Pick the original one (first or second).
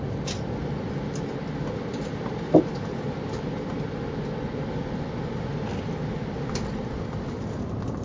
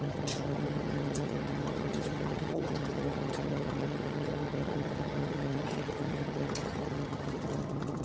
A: first